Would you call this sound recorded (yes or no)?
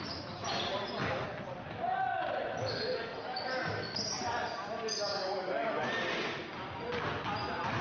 yes